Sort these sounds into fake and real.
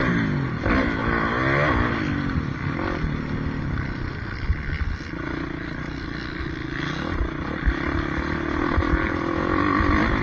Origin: real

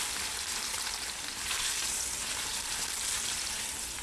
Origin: real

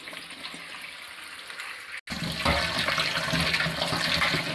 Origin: real